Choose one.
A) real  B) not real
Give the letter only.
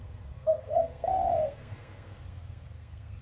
B